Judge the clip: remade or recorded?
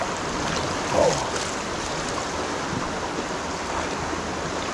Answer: recorded